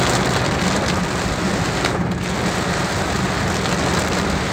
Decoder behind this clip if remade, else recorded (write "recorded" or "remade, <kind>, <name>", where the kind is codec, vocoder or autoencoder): recorded